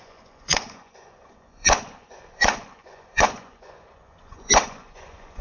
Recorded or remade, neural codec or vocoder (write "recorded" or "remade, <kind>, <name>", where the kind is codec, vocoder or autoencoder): remade, vocoder, Vocos